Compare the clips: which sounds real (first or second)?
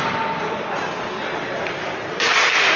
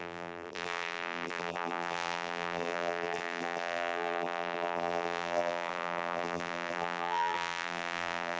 first